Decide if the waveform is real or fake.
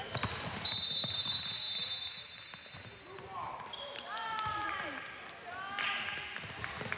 real